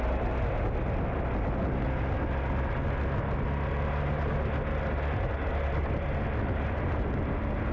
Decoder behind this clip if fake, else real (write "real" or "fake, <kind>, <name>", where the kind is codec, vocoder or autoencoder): real